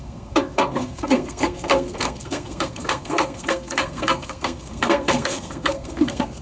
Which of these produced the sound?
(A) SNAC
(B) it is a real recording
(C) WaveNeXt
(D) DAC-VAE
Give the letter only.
A